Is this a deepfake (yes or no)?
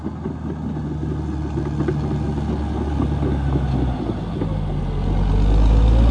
no